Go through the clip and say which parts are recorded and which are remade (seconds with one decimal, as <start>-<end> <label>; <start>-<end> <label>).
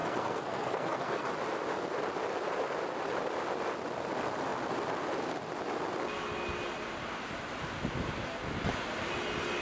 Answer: 0.0-1.3 remade; 1.3-9.6 recorded